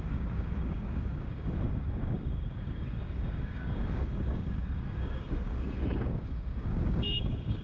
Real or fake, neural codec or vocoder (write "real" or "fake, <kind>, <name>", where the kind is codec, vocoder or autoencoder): fake, codec, DAC